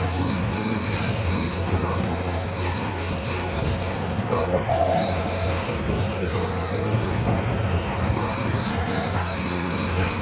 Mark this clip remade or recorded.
remade